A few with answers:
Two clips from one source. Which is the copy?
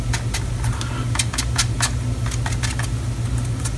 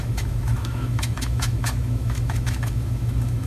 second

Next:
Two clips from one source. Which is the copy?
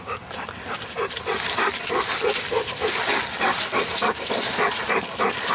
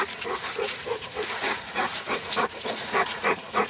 second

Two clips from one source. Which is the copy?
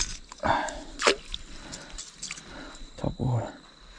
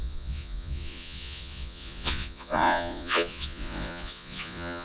second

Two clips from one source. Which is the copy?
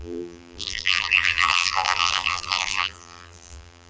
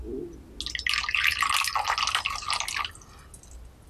first